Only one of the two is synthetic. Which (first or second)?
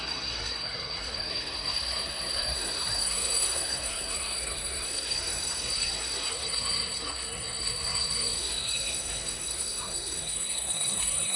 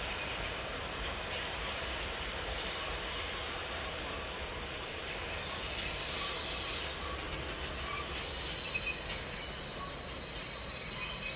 first